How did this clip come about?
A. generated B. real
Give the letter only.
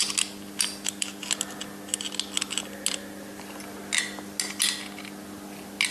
B